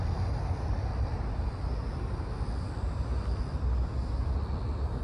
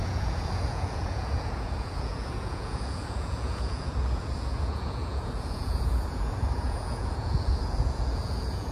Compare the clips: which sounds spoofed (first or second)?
second